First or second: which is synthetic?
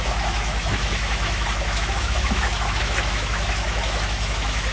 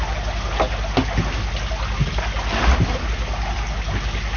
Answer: first